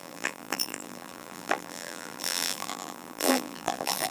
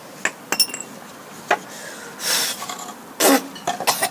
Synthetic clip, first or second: first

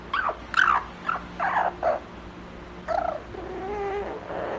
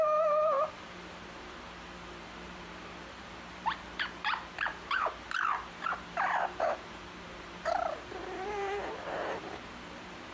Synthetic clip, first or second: second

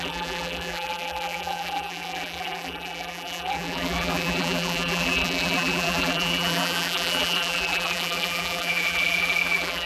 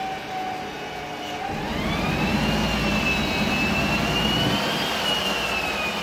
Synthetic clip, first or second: first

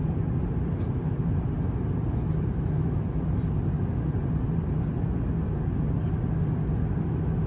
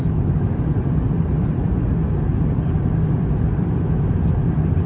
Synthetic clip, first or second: second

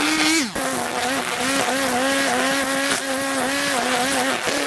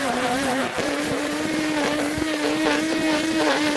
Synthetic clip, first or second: second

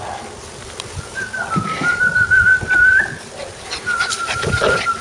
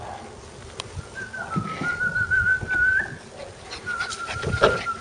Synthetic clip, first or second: first